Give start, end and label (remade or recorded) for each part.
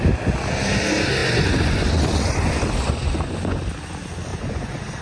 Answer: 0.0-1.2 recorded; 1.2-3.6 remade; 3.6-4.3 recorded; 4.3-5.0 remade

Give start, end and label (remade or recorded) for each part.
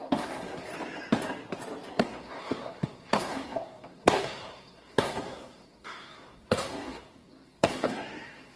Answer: 0.0-0.7 remade; 0.7-1.9 recorded; 1.9-8.6 remade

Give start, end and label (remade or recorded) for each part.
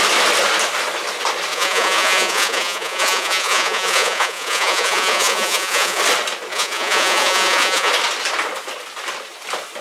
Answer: 0.0-1.5 recorded; 1.5-6.0 remade; 6.0-6.5 recorded; 6.5-7.9 remade; 7.9-9.8 recorded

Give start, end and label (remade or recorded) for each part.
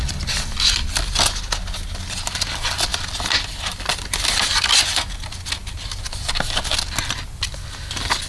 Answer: 0.0-8.3 recorded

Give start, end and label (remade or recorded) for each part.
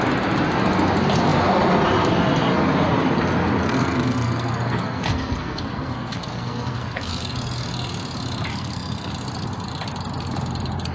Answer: 0.0-3.6 recorded; 3.6-7.3 remade; 7.3-8.5 recorded; 8.5-9.1 remade; 9.1-10.9 recorded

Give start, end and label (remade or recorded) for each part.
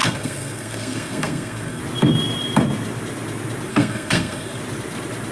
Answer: 0.0-1.8 remade; 1.8-3.7 recorded; 3.7-4.6 remade; 4.6-5.3 recorded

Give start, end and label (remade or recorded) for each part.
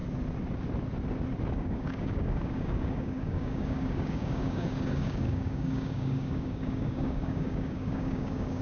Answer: 0.0-1.5 recorded; 1.5-8.6 remade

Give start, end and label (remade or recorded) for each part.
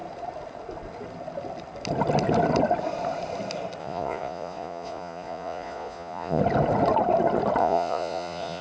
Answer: 0.0-3.8 recorded; 3.8-6.4 remade; 6.4-7.6 recorded; 7.6-8.6 remade